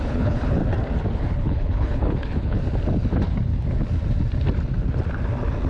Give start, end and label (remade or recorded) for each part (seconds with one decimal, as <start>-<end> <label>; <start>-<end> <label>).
0.0-0.6 remade; 0.6-1.1 recorded; 1.1-2.6 remade; 2.6-5.7 recorded